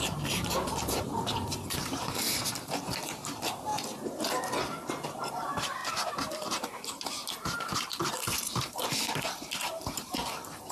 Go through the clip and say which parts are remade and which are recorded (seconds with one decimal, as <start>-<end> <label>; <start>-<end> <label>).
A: 0.0-3.7 remade; 3.7-5.3 recorded; 5.3-10.7 remade